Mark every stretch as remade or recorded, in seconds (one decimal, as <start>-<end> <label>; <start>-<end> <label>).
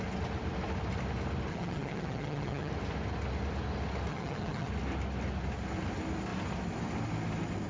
0.0-1.5 recorded; 1.5-2.7 remade; 2.7-4.1 recorded; 4.1-4.7 remade; 4.7-7.7 recorded